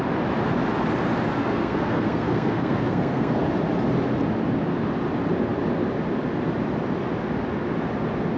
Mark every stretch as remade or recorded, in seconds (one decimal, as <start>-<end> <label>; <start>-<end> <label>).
0.0-1.4 recorded; 1.4-3.4 remade; 3.4-8.4 recorded